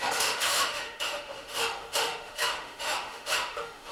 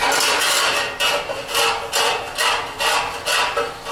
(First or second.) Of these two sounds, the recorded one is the second